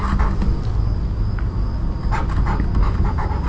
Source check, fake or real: real